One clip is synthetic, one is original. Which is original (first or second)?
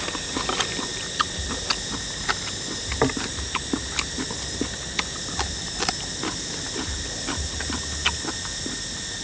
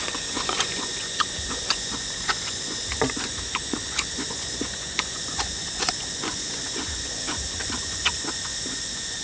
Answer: first